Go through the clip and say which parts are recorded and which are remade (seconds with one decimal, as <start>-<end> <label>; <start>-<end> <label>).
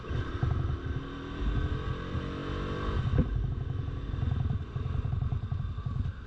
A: 0.0-6.3 recorded